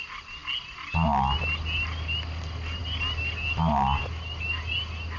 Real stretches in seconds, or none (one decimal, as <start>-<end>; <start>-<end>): 0.0-5.2